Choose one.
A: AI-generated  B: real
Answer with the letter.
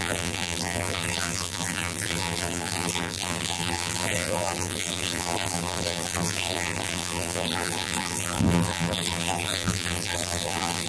A